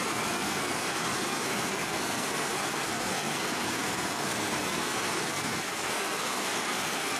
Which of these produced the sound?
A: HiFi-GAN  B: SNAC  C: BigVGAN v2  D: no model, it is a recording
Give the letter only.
B